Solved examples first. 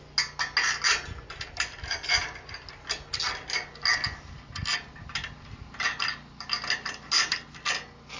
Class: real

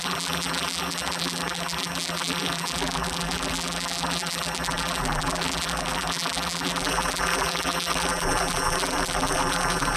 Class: fake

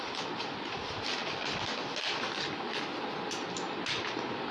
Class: real